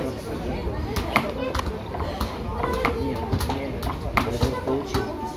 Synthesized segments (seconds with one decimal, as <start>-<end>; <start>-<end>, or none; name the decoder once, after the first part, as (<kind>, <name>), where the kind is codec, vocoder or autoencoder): none